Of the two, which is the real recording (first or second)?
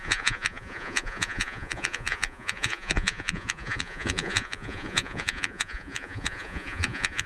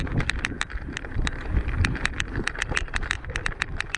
second